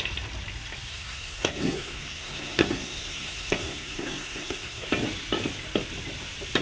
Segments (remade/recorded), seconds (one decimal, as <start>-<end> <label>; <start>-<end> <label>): 0.0-0.9 recorded; 0.9-4.9 remade; 4.9-6.6 recorded